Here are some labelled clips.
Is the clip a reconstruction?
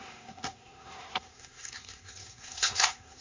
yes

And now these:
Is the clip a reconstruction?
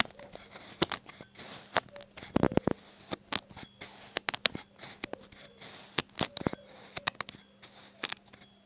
no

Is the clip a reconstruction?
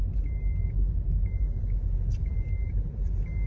no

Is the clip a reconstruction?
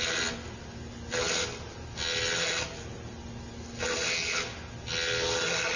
no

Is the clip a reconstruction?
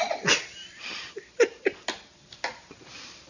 no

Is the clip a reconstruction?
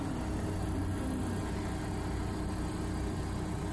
no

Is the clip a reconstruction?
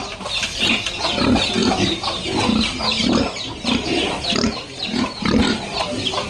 no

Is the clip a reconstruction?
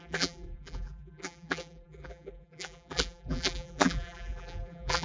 yes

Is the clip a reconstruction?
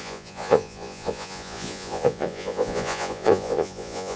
yes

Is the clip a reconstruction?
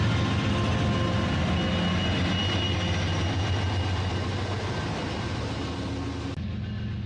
no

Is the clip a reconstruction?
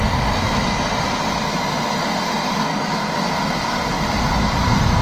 no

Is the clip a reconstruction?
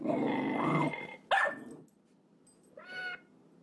no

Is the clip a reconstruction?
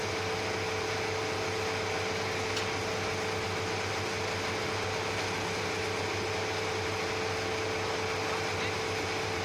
no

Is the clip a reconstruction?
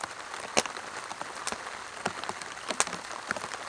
no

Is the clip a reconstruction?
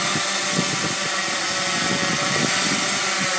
no